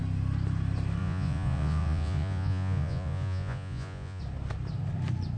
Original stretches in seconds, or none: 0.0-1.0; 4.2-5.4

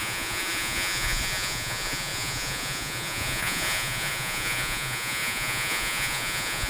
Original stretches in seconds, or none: none

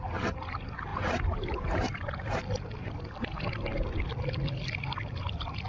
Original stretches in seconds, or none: 0.0-0.9; 2.4-5.7

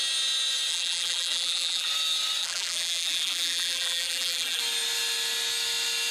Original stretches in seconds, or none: 0.0-0.7; 1.9-2.4; 4.6-6.1

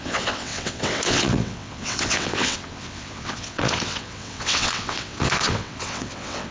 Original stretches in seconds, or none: none

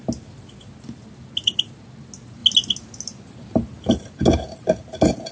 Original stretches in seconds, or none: 0.0-5.3

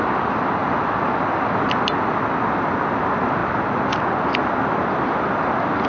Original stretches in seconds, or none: 0.0-5.9